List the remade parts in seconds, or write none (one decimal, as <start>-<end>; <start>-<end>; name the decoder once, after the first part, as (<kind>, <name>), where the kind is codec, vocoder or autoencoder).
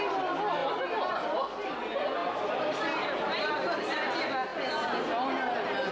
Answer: 0.6-1.1 (vocoder, BigVGAN v2); 2.2-3.5